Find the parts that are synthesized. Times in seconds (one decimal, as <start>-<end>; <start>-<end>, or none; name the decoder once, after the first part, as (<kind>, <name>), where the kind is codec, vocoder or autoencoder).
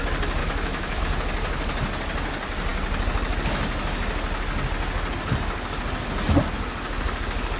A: 0.4-1.0 (autoencoder, DAC-VAE)